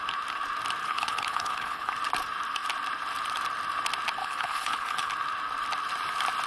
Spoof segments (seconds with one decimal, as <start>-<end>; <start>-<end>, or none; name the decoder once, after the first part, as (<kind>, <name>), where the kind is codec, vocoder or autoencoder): 0.8-1.9 (codec, HILCodec); 4.2-5.1